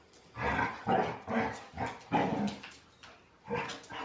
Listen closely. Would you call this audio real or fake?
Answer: real